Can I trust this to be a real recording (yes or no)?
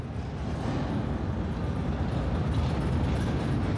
yes